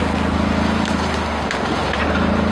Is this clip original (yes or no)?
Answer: yes